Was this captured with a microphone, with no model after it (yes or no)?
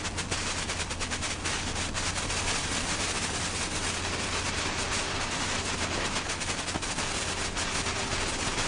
yes